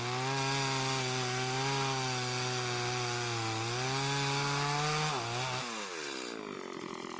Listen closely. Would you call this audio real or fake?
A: real